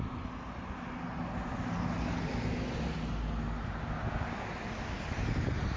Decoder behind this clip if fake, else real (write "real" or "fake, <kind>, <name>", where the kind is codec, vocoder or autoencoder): real